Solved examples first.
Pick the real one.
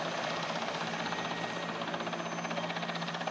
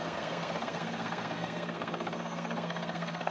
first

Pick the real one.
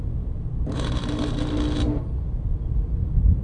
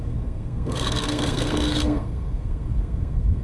first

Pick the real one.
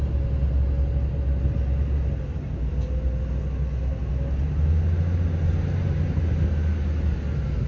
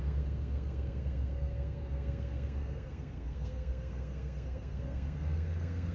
first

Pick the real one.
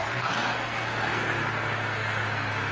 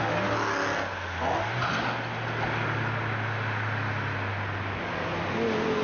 second